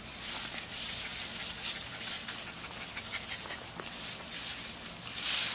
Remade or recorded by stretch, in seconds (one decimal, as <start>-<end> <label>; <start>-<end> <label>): 0.0-5.5 recorded